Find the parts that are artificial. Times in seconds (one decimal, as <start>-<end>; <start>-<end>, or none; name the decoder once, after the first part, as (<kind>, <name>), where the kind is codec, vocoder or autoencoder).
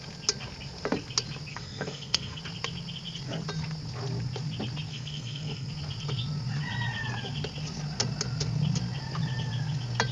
1.5-2.4 (codec, SNAC); 4.9-5.7